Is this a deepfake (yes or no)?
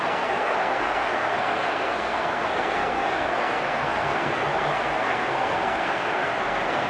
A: yes